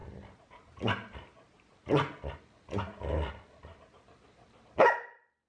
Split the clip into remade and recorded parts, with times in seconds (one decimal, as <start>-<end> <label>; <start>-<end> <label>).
0.0-5.5 recorded